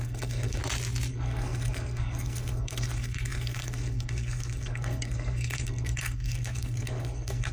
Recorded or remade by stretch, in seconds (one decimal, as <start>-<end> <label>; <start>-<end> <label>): 0.0-0.6 remade; 0.6-1.1 recorded; 1.1-7.5 remade